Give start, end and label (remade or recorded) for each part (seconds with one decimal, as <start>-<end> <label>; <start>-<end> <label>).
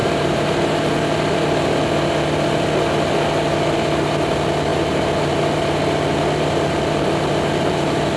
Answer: 0.0-0.9 remade; 0.9-8.2 recorded